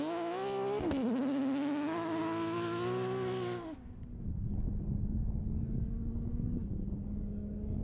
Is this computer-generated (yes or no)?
no